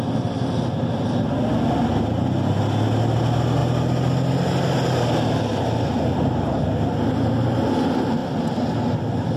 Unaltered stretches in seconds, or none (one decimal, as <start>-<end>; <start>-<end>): 0.0-9.4